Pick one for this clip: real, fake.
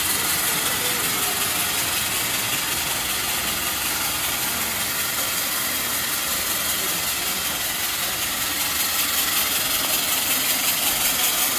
real